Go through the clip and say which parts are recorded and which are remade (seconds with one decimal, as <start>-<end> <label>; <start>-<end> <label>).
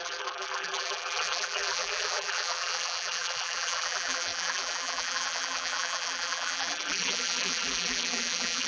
0.0-8.7 remade